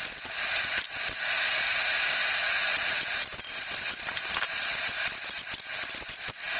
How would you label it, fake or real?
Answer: real